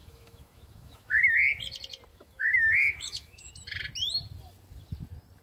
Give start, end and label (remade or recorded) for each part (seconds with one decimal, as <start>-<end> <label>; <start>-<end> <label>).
0.0-1.3 remade; 1.3-2.1 recorded; 2.1-3.5 remade; 3.5-5.4 recorded